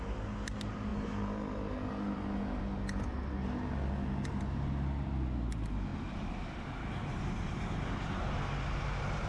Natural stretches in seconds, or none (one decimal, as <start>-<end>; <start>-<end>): 0.0-5.9; 8.4-9.3